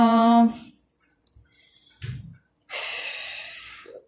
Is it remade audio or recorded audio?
remade